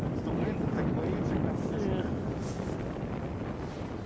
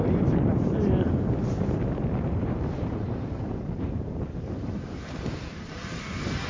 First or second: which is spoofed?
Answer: second